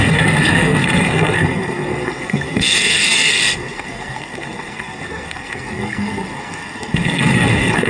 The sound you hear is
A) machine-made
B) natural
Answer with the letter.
A